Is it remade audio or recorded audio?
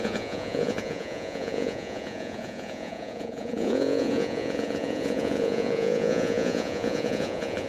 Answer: remade